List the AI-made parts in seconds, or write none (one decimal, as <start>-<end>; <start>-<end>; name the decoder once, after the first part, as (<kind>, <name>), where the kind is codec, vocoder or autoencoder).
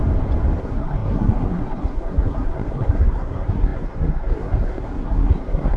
0.6-5.8 (codec, SNAC)